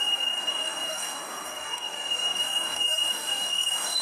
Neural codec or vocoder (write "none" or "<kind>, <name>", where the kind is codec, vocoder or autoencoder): codec, DAC